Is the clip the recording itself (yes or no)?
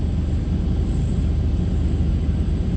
yes